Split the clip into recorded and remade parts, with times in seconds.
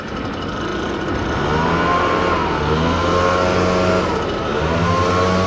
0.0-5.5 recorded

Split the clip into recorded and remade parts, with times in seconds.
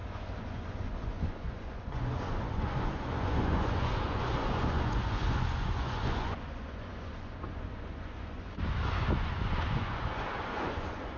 0.0-11.2 remade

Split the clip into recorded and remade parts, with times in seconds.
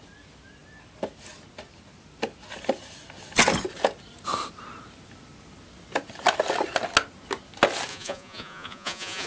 0.0-7.9 recorded; 7.9-9.3 remade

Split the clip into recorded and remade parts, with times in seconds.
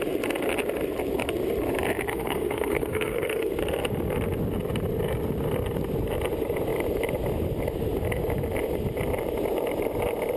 0.0-2.1 recorded; 2.1-3.5 remade; 3.5-10.4 recorded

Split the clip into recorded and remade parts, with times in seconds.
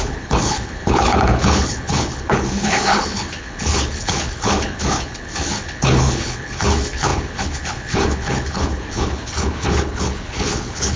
0.0-11.0 remade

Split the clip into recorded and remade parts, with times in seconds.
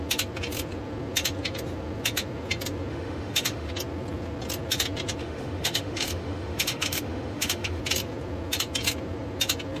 0.0-2.9 recorded; 2.9-3.7 remade; 3.7-5.2 recorded; 5.2-7.8 remade; 7.8-9.8 recorded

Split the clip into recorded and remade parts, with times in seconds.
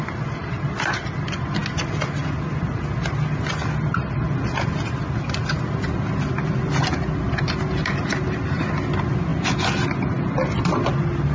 0.0-11.3 recorded